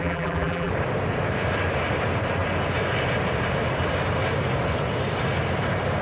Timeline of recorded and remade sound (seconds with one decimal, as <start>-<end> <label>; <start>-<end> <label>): 0.0-0.7 remade; 0.7-6.0 recorded